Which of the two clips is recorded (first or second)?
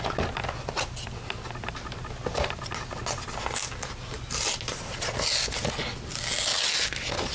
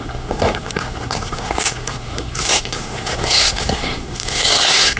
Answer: first